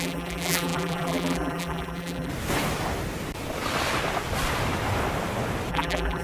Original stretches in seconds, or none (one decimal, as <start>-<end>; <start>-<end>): 2.3-5.7